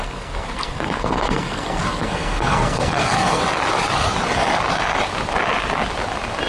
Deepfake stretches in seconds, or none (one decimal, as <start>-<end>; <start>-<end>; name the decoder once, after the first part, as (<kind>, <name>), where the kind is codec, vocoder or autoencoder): 0.0-3.4 (codec, SNAC)